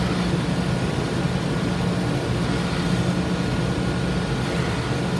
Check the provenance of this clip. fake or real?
real